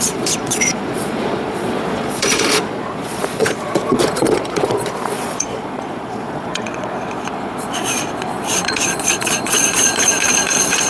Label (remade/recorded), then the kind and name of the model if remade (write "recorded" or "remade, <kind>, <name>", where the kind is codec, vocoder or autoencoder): remade, vocoder, Vocos